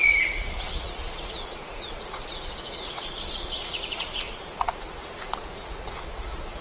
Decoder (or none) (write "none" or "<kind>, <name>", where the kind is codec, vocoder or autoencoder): vocoder, Vocos